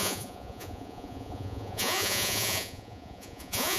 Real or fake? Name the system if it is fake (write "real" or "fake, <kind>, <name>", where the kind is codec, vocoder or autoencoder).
fake, vocoder, Vocos